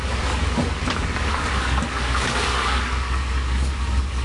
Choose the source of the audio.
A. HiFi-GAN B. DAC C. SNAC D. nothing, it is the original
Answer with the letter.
B